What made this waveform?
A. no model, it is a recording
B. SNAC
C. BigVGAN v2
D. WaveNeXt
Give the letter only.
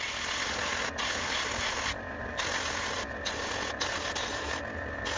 A